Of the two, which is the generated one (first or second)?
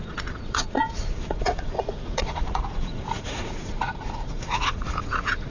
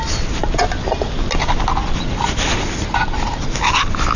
first